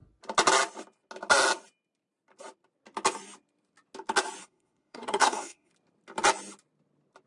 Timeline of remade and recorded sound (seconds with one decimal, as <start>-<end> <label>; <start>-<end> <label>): 0.0-4.4 recorded; 4.4-5.7 remade; 5.7-7.3 recorded